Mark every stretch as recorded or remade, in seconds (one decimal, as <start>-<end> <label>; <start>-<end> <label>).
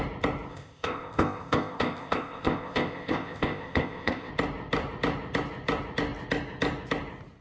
0.0-0.5 recorded; 0.5-4.3 remade; 4.3-7.4 recorded